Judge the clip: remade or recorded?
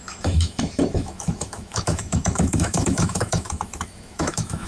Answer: remade